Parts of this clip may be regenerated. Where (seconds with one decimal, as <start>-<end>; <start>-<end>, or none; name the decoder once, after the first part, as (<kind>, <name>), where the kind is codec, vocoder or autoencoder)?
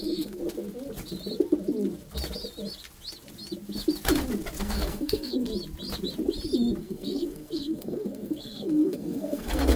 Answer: 0.0-0.4 (codec, SNAC); 4.6-5.5; 6.8-9.8